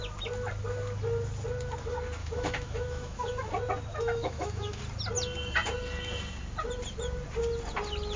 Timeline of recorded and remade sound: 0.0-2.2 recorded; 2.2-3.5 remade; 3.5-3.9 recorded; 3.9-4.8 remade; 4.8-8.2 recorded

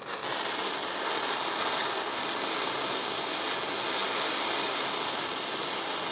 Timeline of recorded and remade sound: 0.0-1.8 recorded; 1.8-2.8 remade; 2.8-4.0 recorded; 4.0-6.1 remade

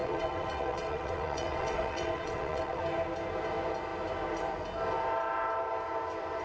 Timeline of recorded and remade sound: 0.0-2.8 remade; 2.8-6.4 recorded